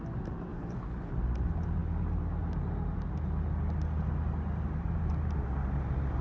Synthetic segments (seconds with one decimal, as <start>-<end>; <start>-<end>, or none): 0.5-1.1